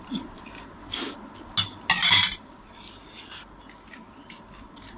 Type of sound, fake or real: real